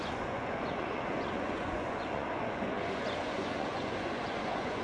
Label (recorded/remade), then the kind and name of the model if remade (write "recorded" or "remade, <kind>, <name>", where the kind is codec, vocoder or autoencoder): remade, vocoder, Vocos